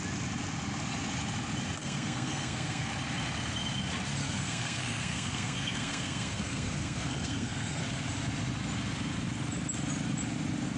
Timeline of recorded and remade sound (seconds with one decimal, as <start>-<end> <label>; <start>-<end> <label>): 0.0-1.8 recorded; 1.8-2.9 remade; 2.9-4.2 recorded; 4.2-7.8 remade; 7.8-10.8 recorded